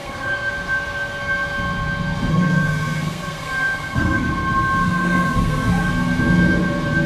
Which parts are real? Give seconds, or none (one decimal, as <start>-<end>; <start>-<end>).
0.5-2.3; 4.3-4.8; 5.9-7.1